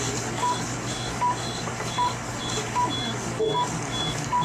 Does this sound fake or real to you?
fake